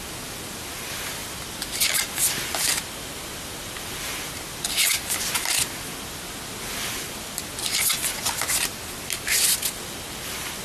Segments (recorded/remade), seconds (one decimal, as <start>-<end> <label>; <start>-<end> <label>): 0.0-10.6 recorded